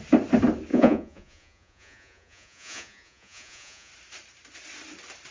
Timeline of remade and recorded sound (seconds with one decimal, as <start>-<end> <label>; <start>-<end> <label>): 0.0-0.7 recorded; 0.7-3.9 remade; 3.9-5.3 recorded